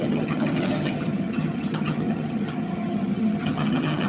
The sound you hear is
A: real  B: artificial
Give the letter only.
B